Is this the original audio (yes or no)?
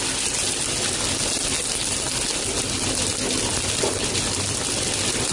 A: yes